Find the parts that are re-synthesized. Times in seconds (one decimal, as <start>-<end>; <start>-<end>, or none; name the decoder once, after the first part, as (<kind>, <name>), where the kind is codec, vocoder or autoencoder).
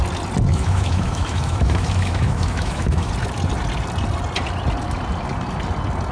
0.5-3.1 (autoencoder, DAC-VAE)